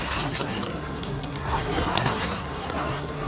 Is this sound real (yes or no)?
no